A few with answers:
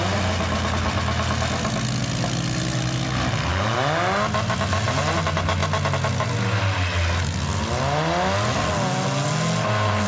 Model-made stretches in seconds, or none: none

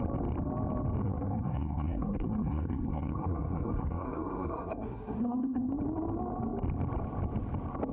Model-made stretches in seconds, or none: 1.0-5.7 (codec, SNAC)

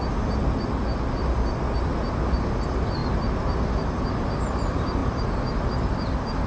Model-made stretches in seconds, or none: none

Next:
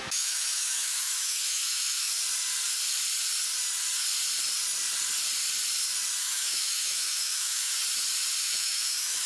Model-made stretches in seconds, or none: 0.0-2.1 (autoencoder, DAC-VAE); 6.2-7.7; 8.4-9.3

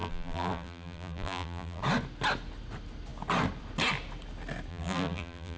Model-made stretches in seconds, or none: 0.0-1.8 (vocoder, BigVGAN v2); 4.7-5.6

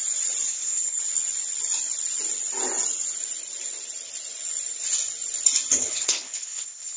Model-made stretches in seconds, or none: 0.5-1.0 (codec, HILCodec); 5.8-7.0

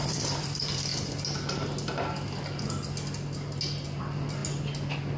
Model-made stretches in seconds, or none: 0.0-0.9 (vocoder, BigVGAN v2); 4.0-4.4